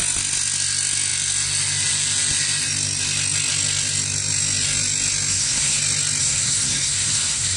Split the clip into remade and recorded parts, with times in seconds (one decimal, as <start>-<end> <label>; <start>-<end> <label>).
0.0-5.3 recorded; 5.3-5.8 remade; 5.8-6.2 recorded; 6.2-7.6 remade